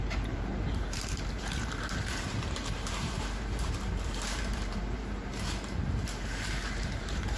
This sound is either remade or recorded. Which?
remade